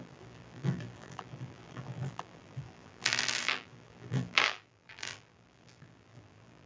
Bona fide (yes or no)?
no